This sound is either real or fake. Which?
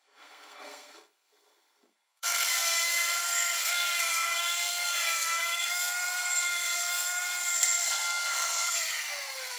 fake